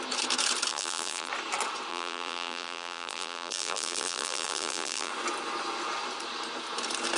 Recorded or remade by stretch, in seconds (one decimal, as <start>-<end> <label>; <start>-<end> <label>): 0.0-0.7 recorded; 0.7-1.3 remade; 1.3-1.9 recorded; 1.9-5.1 remade; 5.1-7.2 recorded

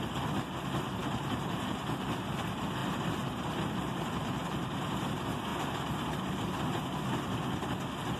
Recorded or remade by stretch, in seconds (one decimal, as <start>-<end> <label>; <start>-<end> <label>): 0.0-1.0 recorded; 1.0-1.6 remade; 1.6-2.8 recorded; 2.8-5.1 remade; 5.1-8.2 recorded